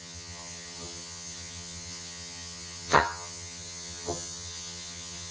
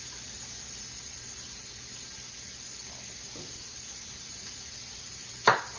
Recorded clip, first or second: second